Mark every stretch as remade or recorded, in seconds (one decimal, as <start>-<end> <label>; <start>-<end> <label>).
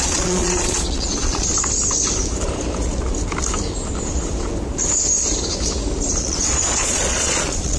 0.0-1.5 remade; 1.5-6.2 recorded; 6.2-7.8 remade